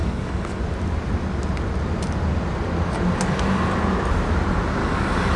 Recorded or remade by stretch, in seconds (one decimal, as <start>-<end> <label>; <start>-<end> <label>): 0.0-0.6 remade; 0.6-4.8 recorded; 4.8-5.4 remade